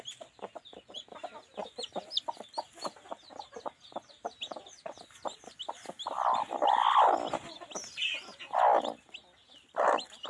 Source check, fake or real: real